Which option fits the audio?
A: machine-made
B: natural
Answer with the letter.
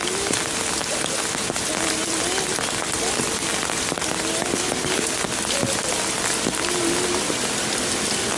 B